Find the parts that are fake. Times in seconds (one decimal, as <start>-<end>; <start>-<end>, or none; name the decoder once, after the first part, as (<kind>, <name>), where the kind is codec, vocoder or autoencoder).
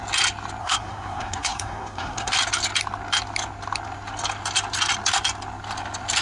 0.6-2.3 (codec, SNAC)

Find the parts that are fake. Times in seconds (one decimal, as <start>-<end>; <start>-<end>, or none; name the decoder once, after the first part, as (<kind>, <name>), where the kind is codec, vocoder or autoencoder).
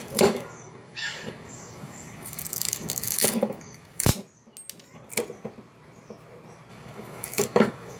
0.0-4.1 (codec, DAC); 6.7-8.0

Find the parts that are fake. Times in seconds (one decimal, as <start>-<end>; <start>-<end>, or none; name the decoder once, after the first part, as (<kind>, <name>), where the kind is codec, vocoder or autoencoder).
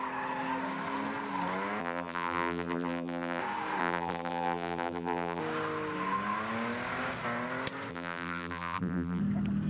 1.8-3.4 (vocoder, BigVGAN v2); 3.8-5.4; 7.9-9.2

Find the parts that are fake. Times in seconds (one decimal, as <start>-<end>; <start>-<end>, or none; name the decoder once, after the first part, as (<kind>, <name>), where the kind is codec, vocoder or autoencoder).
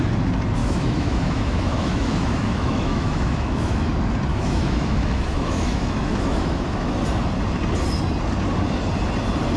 0.6-3.9 (autoencoder, DAC-VAE); 4.3-6.9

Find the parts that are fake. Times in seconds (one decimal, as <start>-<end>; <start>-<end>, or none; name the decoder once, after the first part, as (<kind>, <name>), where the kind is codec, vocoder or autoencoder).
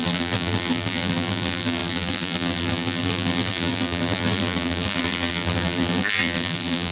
0.0-6.9 (vocoder, BigVGAN v2)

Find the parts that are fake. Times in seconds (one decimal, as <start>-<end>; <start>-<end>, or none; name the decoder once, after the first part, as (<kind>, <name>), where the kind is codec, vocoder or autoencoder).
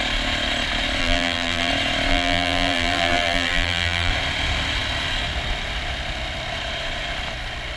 1.0-1.7 (vocoder, BigVGAN v2); 2.1-4.1